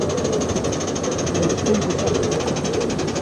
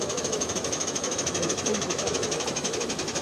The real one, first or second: first